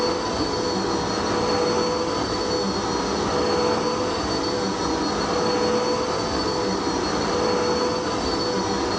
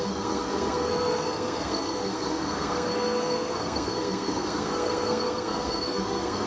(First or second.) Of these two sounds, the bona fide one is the first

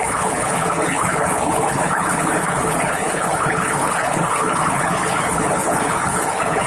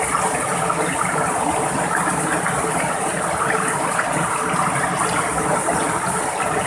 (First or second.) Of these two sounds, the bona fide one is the second